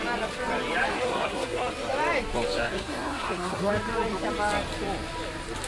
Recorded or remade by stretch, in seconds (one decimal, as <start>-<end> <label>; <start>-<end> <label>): 0.0-0.9 recorded; 0.9-1.7 remade; 1.7-2.6 recorded; 2.6-3.7 remade; 3.7-5.7 recorded